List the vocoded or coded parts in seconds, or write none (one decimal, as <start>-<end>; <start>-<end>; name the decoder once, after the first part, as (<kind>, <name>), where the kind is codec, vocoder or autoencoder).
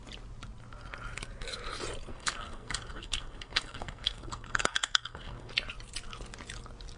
2.1-5.5 (codec, SNAC)